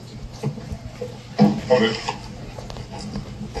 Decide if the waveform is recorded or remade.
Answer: recorded